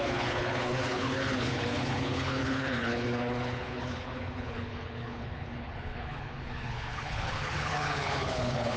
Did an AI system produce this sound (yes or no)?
yes